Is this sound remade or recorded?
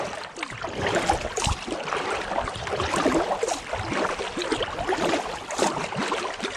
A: recorded